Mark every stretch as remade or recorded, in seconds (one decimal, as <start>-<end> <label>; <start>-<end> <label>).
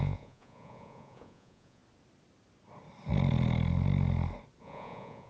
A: 0.0-1.8 remade; 1.8-4.6 recorded; 4.6-5.3 remade